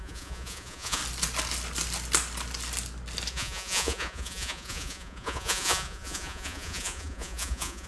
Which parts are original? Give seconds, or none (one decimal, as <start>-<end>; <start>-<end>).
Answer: 1.0-3.3